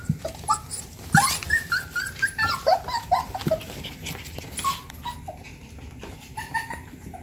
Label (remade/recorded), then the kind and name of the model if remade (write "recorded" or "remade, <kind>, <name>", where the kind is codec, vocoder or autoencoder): remade, vocoder, BigVGAN v2